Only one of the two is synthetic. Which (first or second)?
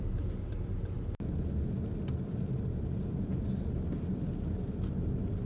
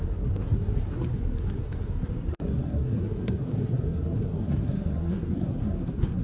second